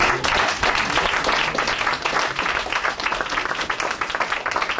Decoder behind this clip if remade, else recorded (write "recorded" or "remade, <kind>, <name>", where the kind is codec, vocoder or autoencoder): recorded